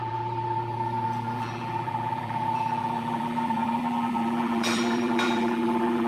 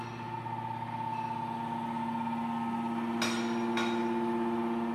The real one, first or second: second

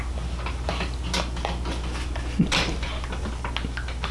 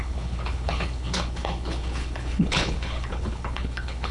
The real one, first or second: first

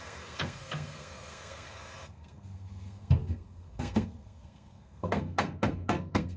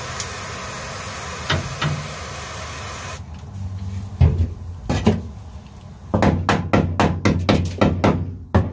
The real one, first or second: second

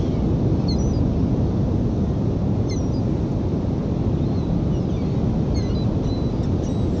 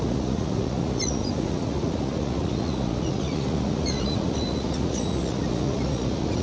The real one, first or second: first